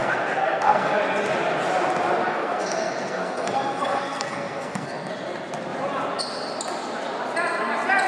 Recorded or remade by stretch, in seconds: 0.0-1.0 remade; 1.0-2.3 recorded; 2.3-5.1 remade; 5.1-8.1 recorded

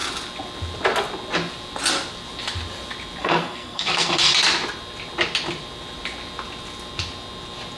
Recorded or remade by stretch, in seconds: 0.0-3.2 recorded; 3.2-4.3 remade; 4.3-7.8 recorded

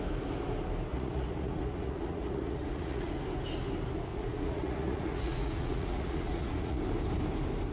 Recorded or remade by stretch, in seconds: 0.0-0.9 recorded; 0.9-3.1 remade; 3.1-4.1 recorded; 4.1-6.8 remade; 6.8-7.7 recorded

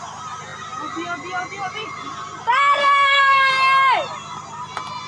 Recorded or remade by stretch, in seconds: 0.0-2.8 recorded; 2.8-3.5 remade; 3.5-5.1 recorded

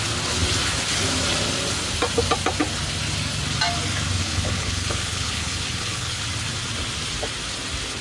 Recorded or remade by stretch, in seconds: 0.0-4.2 recorded; 4.2-6.2 remade; 6.2-8.0 recorded

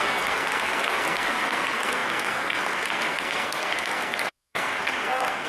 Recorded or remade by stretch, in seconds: 0.0-5.5 remade